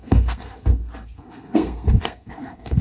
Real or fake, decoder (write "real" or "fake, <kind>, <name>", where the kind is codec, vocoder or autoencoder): fake, codec, SNAC